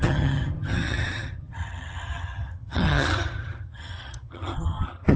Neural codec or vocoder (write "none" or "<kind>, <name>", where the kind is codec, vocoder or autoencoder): vocoder, HiFi-GAN